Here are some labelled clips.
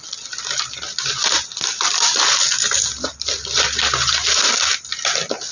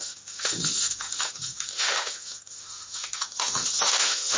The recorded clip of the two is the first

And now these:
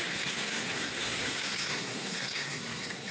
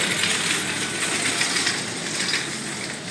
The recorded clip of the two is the second